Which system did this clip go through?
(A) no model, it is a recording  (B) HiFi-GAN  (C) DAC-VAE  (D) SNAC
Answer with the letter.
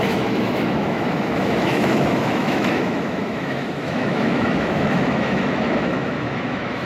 C